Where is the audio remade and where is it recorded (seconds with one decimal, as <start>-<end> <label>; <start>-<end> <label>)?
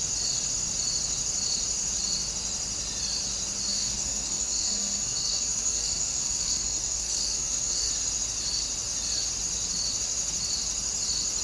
0.0-3.7 recorded; 3.7-7.9 remade; 7.9-11.4 recorded